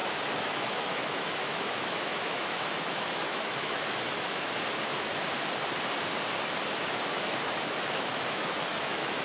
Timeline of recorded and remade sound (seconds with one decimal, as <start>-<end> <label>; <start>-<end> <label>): 0.0-4.5 remade; 4.5-6.8 recorded; 6.8-9.2 remade